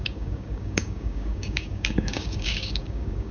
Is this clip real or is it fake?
fake